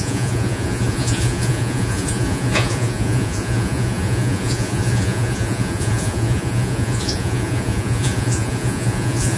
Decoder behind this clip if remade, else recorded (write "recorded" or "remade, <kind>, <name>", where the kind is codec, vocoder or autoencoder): remade, vocoder, Vocos